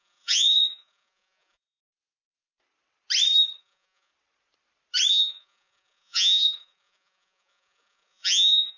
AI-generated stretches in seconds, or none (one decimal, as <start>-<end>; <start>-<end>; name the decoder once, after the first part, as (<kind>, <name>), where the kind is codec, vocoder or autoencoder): 0.0-1.8 (vocoder, Vocos); 3.6-4.1; 5.1-8.8